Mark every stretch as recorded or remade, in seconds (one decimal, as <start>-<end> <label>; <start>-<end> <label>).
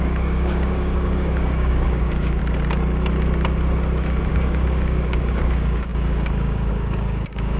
0.0-2.4 remade; 2.4-4.3 recorded; 4.3-7.6 remade